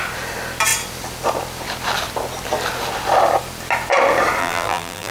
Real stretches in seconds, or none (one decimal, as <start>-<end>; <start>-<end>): 0.0-4.4